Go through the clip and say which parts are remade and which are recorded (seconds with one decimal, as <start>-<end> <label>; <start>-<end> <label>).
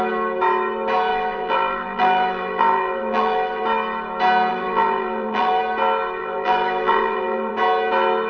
0.0-1.1 recorded; 1.1-3.6 remade; 3.6-4.5 recorded; 4.5-5.6 remade; 5.6-6.2 recorded; 6.2-7.5 remade; 7.5-8.3 recorded